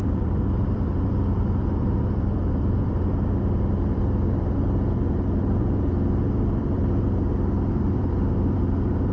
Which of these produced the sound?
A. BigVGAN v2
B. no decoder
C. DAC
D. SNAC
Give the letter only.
A